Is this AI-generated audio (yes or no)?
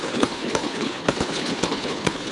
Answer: yes